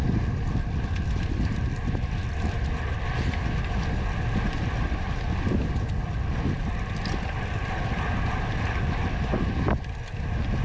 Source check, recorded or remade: recorded